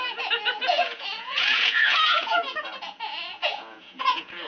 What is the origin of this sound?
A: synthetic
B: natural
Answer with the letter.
A